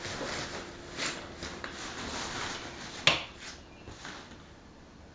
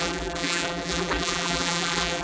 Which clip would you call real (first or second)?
first